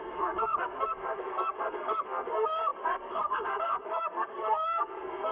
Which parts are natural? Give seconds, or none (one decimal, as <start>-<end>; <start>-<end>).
none